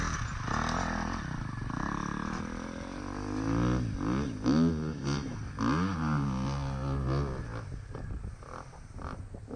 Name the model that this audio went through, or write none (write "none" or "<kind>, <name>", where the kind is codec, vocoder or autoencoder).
none